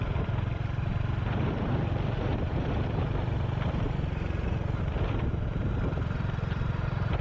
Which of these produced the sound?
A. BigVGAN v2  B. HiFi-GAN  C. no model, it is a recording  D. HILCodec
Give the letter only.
A